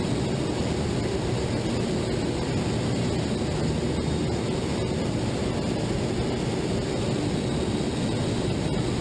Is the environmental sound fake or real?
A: real